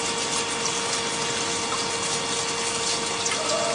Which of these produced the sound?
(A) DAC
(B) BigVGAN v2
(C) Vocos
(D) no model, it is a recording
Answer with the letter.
D